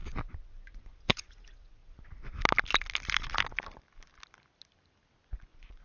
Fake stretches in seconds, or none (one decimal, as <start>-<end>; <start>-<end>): 0.0-1.8; 5.2-5.8